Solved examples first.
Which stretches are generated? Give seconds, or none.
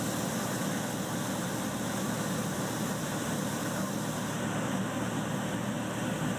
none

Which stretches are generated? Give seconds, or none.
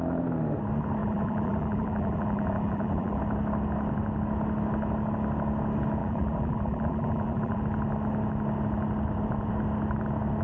1.0-3.2 (vocoder, BigVGAN v2); 6.0-7.6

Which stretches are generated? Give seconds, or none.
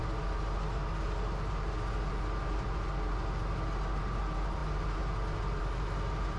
none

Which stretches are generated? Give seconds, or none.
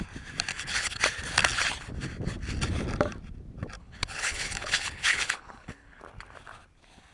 0.5-1.0 (codec, HILCodec); 3.8-6.0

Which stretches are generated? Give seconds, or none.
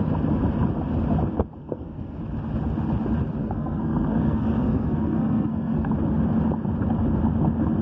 1.6-2.2 (codec, SNAC); 3.4-5.9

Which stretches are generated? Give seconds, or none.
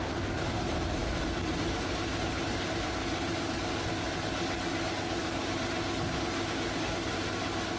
none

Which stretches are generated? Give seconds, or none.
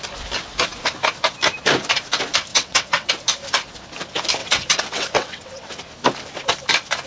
2.5-3.1 (vocoder, WaveNeXt); 4.4-5.7